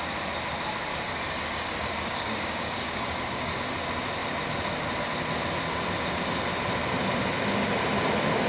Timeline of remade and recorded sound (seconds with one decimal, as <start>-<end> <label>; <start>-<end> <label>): 0.0-0.9 recorded; 0.9-3.6 remade; 3.6-8.5 recorded

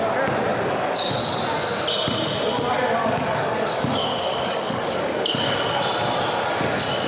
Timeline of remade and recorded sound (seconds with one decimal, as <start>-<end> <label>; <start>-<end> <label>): 0.0-0.5 recorded; 0.5-1.4 remade; 1.4-3.0 recorded; 3.0-5.6 remade; 5.6-7.1 recorded

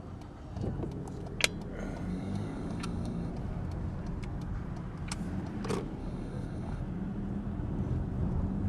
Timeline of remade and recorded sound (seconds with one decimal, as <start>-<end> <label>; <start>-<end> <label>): 0.0-2.1 recorded; 2.1-3.3 remade; 3.3-6.0 recorded; 6.0-6.8 remade; 6.8-8.7 recorded